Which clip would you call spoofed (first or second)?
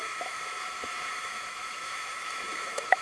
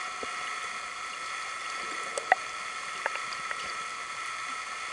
first